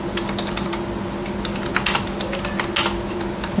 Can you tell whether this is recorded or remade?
recorded